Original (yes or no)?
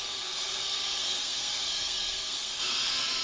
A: no